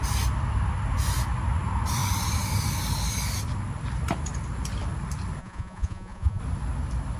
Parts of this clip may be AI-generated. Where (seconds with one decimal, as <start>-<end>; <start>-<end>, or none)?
5.4-6.4